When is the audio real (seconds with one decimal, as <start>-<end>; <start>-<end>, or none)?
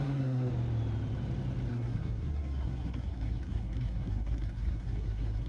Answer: 0.5-1.7